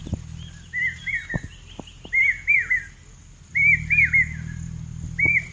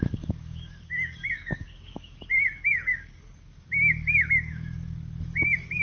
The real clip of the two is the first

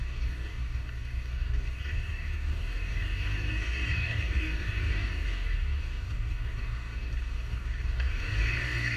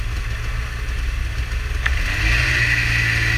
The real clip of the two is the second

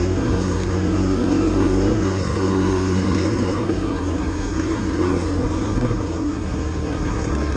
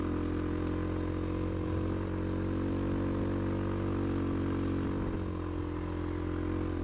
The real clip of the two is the second